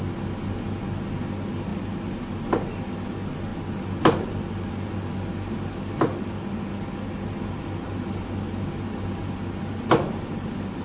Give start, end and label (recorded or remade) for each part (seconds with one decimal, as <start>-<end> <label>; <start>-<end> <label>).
0.0-10.8 recorded